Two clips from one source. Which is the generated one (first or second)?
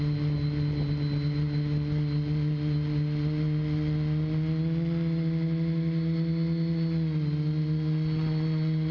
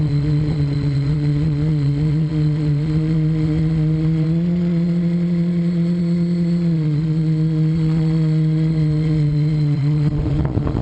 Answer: second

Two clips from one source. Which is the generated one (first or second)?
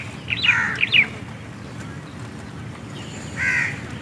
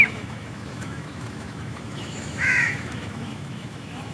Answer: second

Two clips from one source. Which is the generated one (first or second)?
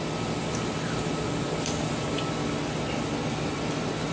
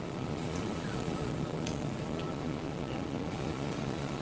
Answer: second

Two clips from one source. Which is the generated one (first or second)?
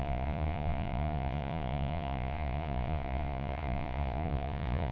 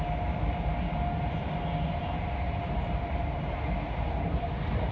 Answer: first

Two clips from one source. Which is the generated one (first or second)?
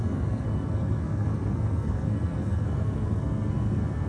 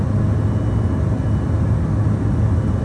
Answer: first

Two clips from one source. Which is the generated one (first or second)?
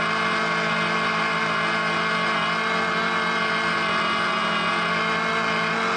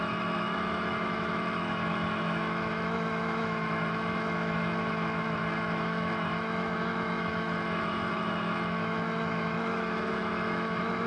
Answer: second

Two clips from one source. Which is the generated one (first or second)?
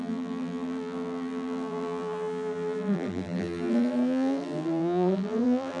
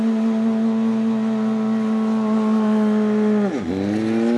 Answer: first